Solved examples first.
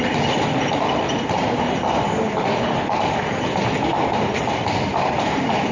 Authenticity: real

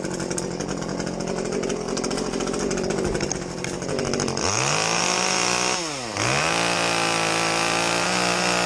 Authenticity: real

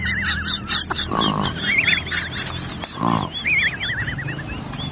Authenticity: real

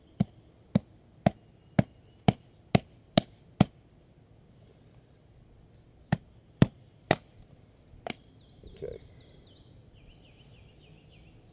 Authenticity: real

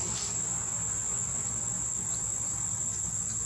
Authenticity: real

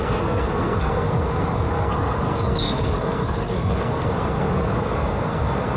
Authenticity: fake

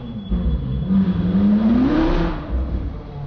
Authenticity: real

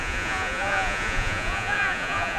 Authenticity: fake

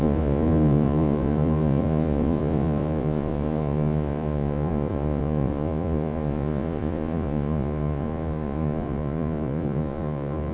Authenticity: fake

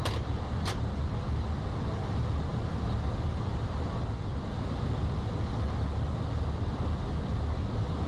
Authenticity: real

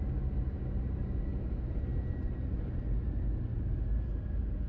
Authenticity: real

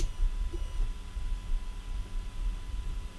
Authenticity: real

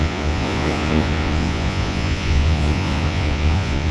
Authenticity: fake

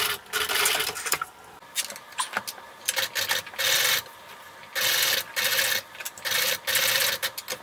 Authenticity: real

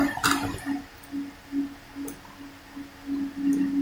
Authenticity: real